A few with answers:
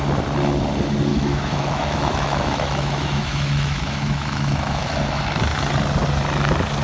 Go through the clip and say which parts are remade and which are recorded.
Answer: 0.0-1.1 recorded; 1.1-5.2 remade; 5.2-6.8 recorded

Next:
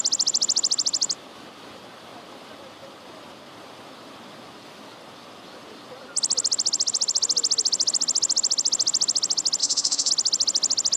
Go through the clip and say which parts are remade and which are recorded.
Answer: 0.0-9.6 recorded; 9.6-10.1 remade; 10.1-11.0 recorded